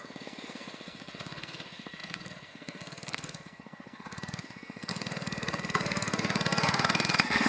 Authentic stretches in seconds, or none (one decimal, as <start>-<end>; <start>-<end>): none